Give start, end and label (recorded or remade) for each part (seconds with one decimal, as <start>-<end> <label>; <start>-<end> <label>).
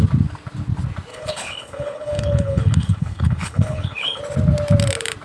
0.0-1.1 recorded; 1.1-4.2 remade; 4.2-5.2 recorded